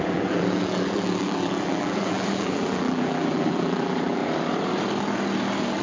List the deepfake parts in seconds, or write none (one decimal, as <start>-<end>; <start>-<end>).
0.0-4.2